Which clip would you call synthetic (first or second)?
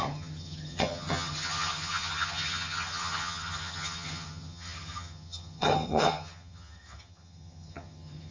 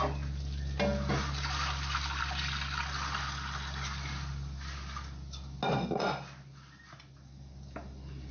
first